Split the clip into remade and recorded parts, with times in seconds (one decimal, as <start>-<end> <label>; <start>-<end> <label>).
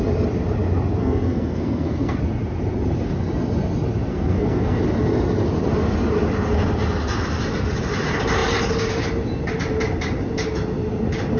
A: 0.0-1.0 recorded; 1.0-2.2 remade; 2.2-4.1 recorded; 4.1-4.8 remade; 4.8-11.4 recorded